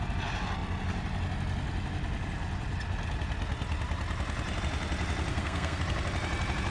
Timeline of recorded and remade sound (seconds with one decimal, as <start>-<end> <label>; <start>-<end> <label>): 0.0-5.3 recorded; 5.3-5.8 remade; 5.8-6.7 recorded